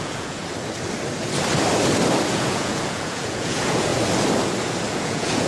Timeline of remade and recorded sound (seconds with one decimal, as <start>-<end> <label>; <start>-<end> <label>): 0.0-0.4 remade; 0.4-2.3 recorded; 2.3-3.9 remade; 3.9-4.9 recorded; 4.9-5.5 remade